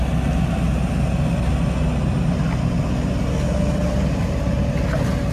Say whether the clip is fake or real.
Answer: real